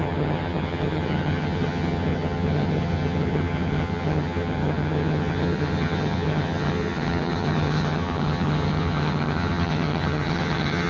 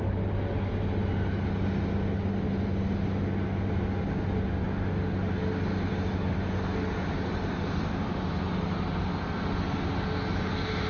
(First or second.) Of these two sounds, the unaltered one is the second